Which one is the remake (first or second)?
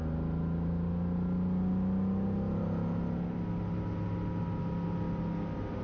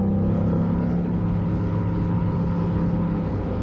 second